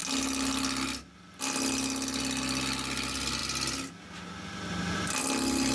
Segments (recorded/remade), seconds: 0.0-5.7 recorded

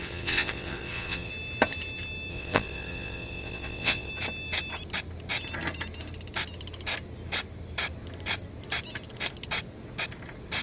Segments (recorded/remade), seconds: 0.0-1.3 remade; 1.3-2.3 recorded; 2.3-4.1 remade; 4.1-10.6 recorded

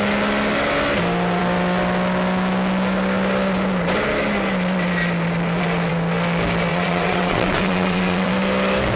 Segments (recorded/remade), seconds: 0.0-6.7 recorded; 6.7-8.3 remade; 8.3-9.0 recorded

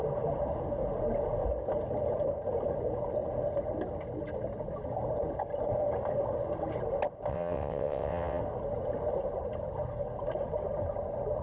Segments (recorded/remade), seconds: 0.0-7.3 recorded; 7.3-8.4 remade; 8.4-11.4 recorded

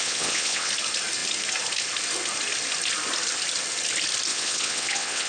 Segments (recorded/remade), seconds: 0.0-0.7 remade; 0.7-4.3 recorded; 4.3-5.3 remade